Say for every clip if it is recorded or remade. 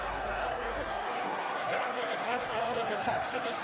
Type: remade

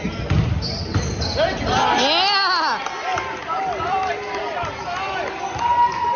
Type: recorded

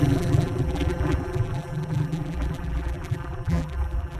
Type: remade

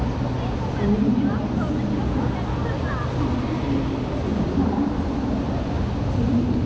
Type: recorded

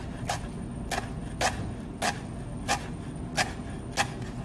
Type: recorded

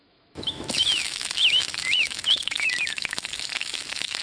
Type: remade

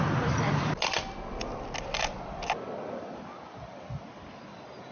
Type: recorded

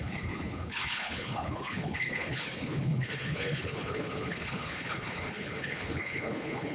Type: remade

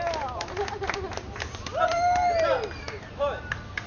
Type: recorded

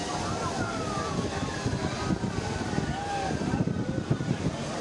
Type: recorded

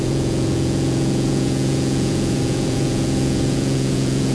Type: remade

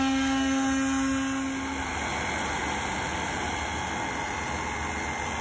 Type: recorded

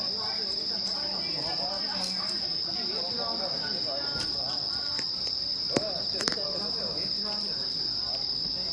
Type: recorded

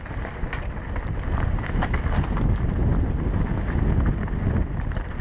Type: recorded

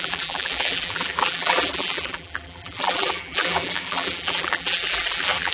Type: remade